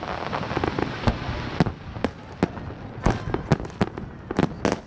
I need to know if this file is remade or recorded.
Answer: recorded